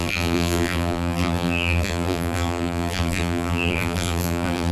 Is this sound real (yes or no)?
no